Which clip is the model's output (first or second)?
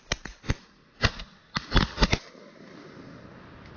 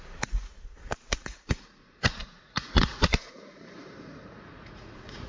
second